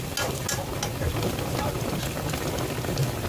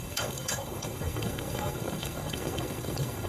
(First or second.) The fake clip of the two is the second